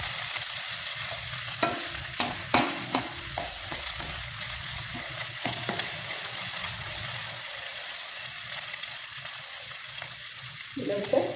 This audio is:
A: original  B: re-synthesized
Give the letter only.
B